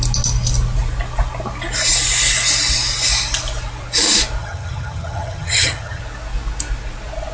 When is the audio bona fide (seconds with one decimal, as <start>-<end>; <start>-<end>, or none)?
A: 0.0-4.4; 6.0-7.3

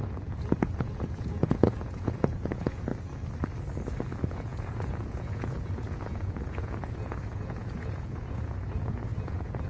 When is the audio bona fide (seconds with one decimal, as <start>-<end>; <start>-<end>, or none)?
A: 2.9-4.2